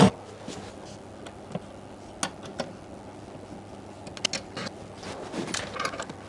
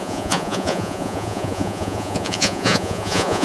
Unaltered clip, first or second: first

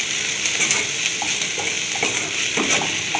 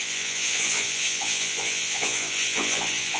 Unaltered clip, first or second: first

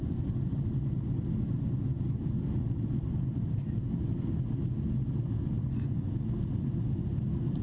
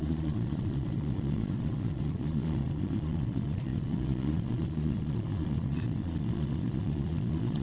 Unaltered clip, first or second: first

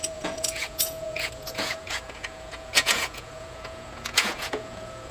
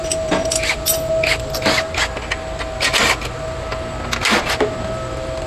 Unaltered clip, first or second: second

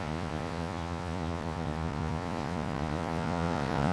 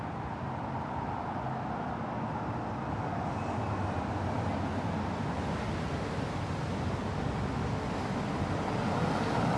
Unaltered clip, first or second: second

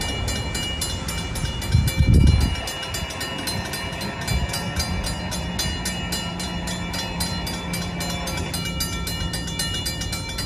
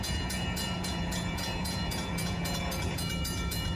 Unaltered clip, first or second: first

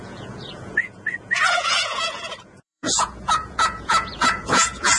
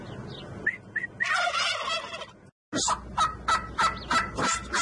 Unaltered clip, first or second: second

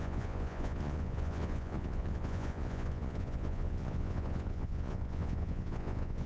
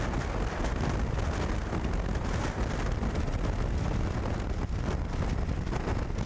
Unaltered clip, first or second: second